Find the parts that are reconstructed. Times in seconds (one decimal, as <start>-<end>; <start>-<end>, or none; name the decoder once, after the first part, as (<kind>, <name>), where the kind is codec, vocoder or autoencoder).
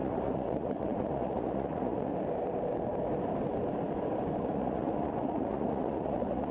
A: 0.0-2.1 (vocoder, Vocos); 4.4-6.5